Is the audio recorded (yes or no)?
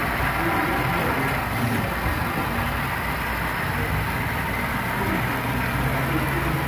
yes